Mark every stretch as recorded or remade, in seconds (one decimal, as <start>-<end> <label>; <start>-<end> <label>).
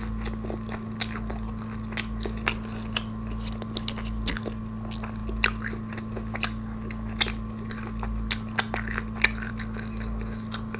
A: 0.0-10.8 recorded